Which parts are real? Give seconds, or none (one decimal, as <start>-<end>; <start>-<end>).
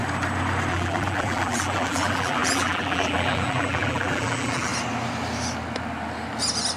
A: 0.0-0.7; 4.7-6.8